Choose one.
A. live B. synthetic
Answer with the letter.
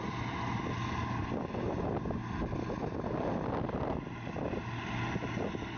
A